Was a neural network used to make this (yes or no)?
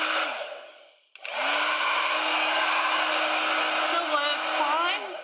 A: no